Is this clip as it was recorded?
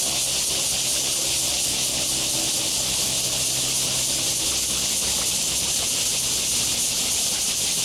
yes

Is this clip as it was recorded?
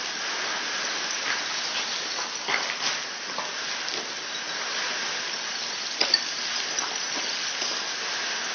yes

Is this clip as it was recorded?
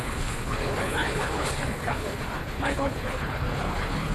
no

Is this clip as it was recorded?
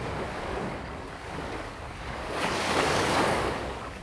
no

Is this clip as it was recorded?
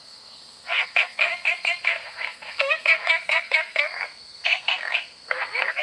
no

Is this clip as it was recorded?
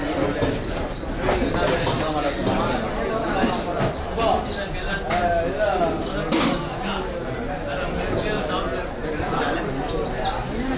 yes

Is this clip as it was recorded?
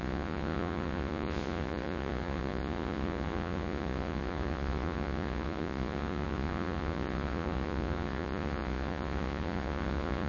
no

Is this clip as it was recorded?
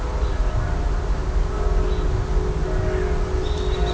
yes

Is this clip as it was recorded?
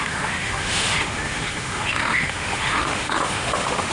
no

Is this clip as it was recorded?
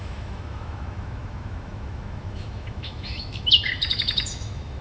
no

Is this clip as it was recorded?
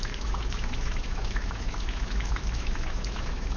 no